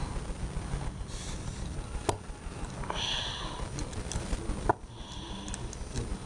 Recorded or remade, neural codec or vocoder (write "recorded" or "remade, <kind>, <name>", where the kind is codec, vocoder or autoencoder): recorded